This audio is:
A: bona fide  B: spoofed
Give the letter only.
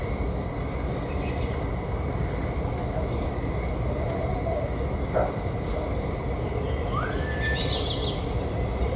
A